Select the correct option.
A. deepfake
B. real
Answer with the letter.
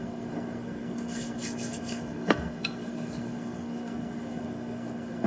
A